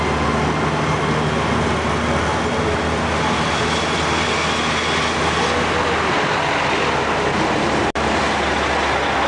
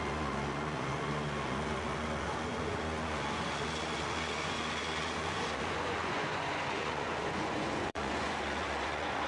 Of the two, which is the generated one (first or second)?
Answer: second